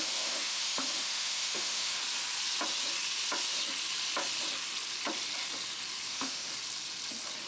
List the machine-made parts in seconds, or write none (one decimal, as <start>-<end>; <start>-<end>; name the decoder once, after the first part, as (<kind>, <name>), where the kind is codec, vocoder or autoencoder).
0.0-2.0 (autoencoder, DAC-VAE); 6.1-6.5